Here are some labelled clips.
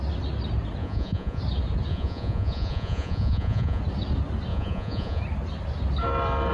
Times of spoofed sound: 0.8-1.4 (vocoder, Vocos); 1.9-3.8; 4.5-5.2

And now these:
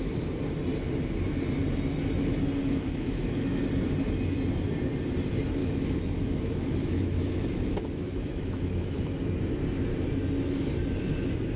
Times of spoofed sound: 2.6-3.6 (autoencoder, DAC-VAE); 5.6-9.1

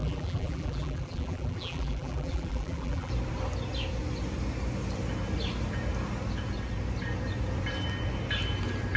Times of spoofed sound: 0.0-3.1 (vocoder, BigVGAN v2)

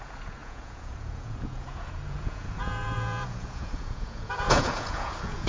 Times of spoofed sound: 0.0-5.5 (vocoder, Vocos)